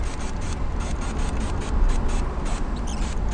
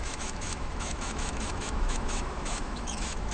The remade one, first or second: second